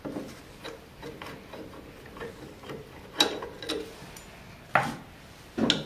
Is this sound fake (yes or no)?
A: no